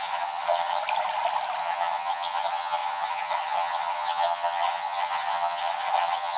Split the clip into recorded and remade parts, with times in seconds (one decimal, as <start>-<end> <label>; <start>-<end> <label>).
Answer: 0.0-0.8 remade; 0.8-1.6 recorded; 1.6-6.4 remade

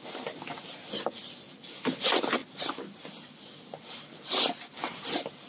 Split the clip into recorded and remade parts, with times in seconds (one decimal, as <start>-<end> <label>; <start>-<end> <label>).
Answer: 0.0-5.5 recorded

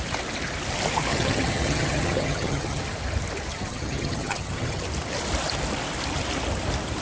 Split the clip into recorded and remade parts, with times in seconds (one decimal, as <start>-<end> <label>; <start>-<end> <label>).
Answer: 0.0-1.1 recorded; 1.1-2.8 remade; 2.8-3.5 recorded; 3.5-4.8 remade; 4.8-7.0 recorded